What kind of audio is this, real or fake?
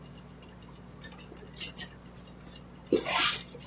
real